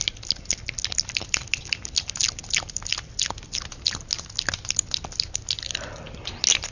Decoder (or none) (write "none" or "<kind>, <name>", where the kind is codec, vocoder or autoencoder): none